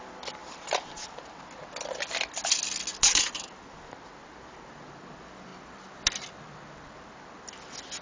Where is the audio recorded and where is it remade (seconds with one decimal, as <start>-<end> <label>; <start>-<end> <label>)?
0.0-0.4 recorded; 0.4-1.4 remade; 1.4-2.9 recorded; 2.9-3.9 remade; 3.9-8.0 recorded